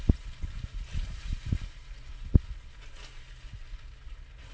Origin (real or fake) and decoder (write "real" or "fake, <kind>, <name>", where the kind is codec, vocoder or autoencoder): real